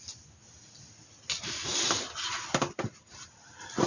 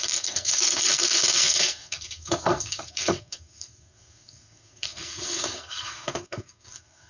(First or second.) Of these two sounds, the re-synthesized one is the second